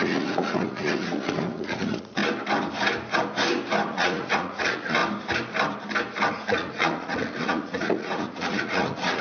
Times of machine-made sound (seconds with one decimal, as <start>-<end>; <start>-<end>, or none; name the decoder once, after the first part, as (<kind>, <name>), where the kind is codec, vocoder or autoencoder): 0.0-2.2 (vocoder, Vocos); 3.9-5.0; 6.3-9.2